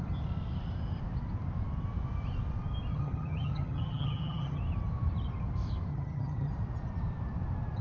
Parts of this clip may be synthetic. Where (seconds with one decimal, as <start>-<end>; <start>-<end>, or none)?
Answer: 2.9-4.6; 5.9-6.5